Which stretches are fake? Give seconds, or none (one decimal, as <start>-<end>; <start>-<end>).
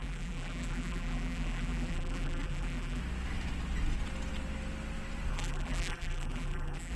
0.0-3.0; 5.3-7.0